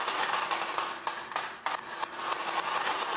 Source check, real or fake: real